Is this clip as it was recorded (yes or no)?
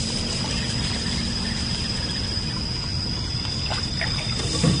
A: yes